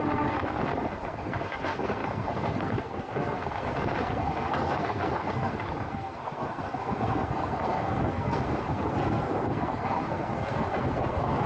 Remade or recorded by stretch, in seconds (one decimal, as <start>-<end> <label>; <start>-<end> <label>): 0.0-11.5 remade